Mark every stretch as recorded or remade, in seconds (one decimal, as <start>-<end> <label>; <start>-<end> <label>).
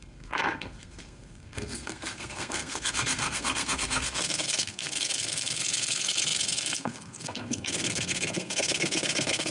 0.0-9.5 remade